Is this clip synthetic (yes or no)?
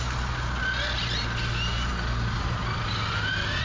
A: no